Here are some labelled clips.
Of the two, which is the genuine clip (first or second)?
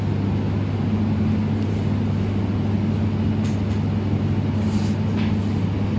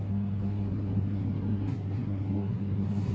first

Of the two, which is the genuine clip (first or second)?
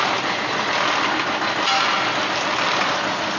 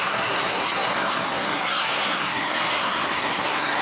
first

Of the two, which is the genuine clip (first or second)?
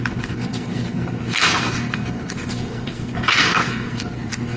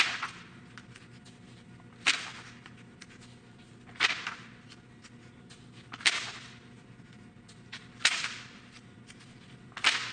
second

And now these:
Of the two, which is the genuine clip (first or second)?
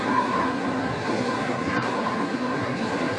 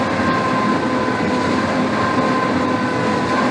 second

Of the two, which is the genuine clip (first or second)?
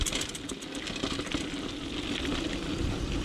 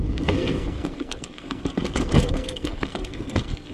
first